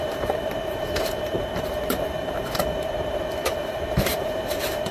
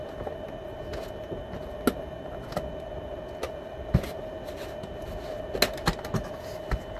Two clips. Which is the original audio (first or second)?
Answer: second